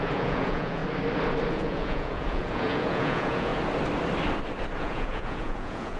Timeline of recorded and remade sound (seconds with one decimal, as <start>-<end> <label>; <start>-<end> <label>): 0.0-0.8 remade; 0.8-1.5 recorded; 1.5-3.5 remade; 3.5-4.8 recorded; 4.8-6.0 remade